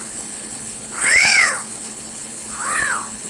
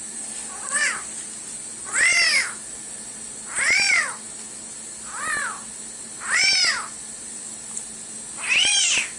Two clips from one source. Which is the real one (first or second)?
second